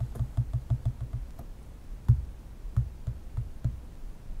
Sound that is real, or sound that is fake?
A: real